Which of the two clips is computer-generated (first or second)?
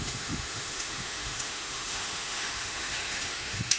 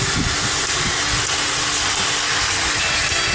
first